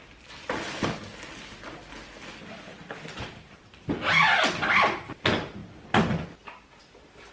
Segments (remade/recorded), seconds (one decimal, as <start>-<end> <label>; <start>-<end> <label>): 0.0-7.3 recorded